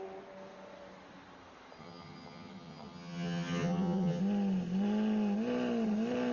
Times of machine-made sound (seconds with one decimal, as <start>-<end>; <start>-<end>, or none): 1.8-4.2